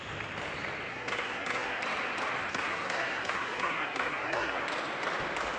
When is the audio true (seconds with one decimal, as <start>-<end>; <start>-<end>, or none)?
0.0-0.9; 1.8-2.5; 4.6-5.6